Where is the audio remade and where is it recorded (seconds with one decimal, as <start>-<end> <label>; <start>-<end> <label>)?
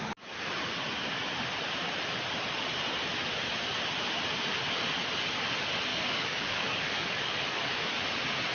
0.0-5.9 recorded; 5.9-7.8 remade; 7.8-8.5 recorded